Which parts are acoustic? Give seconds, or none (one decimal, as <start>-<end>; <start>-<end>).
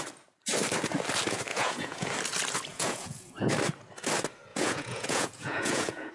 0.0-1.5; 2.1-2.7; 3.5-4.5